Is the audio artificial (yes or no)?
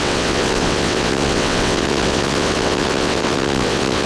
yes